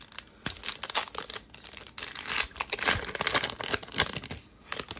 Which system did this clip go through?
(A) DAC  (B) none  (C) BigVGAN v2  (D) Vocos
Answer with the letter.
B